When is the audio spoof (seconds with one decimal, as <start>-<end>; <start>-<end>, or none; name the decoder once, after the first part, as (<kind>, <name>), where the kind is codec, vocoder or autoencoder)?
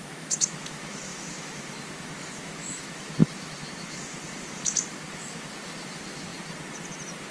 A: 0.0-6.3 (autoencoder, DAC-VAE)